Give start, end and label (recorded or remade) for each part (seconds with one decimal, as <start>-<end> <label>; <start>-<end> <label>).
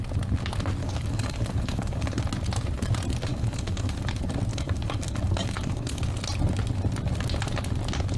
0.0-0.8 recorded; 0.8-2.1 remade; 2.1-3.3 recorded; 3.3-4.1 remade; 4.1-4.5 recorded; 4.5-6.1 remade; 6.1-8.2 recorded